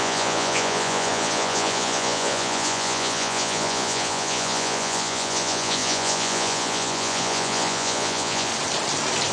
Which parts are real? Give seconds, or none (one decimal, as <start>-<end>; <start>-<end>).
8.5-9.3